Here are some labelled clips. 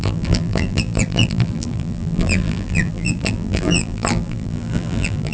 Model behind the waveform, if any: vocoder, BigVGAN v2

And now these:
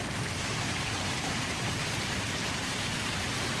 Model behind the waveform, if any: vocoder, BigVGAN v2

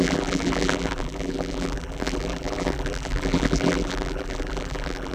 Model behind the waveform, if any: vocoder, BigVGAN v2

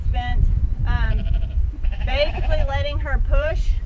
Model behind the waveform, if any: vocoder, BigVGAN v2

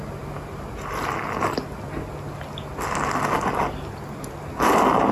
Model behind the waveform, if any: none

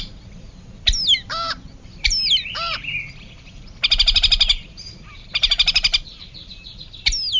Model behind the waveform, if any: none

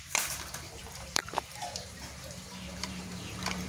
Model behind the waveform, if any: vocoder, BigVGAN v2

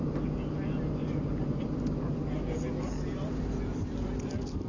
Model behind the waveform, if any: none